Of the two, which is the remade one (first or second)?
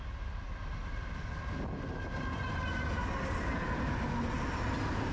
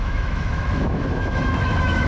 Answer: second